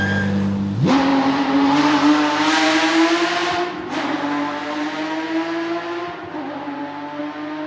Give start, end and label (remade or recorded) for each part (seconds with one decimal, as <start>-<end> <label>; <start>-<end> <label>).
0.0-7.7 recorded